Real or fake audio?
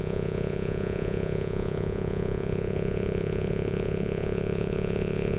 fake